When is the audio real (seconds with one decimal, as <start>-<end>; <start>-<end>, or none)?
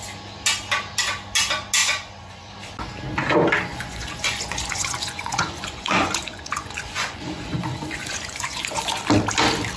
0.0-1.8; 2.5-3.7; 9.0-9.8